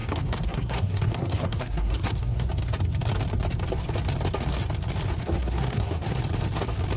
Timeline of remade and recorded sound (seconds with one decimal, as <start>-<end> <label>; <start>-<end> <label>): 0.0-2.5 remade; 2.5-5.2 recorded; 5.2-6.2 remade; 6.2-7.0 recorded